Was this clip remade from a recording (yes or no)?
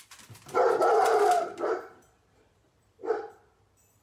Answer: yes